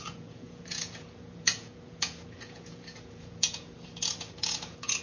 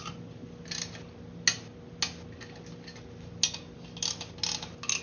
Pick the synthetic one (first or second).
first